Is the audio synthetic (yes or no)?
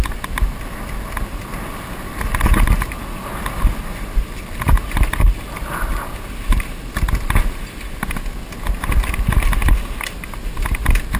no